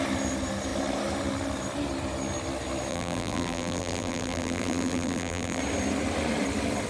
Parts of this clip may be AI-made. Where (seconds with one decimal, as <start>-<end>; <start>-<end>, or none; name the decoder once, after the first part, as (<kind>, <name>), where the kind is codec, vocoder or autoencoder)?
2.9-5.6 (vocoder, BigVGAN v2)